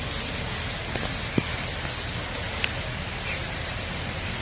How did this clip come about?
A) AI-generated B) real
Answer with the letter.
B